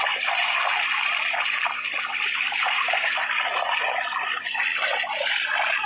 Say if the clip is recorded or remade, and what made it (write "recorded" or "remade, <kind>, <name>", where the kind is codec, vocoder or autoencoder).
recorded